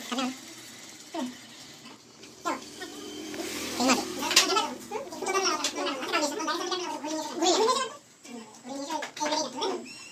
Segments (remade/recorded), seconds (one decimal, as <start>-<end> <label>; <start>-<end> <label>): 0.0-10.1 remade